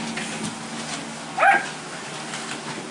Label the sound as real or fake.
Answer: real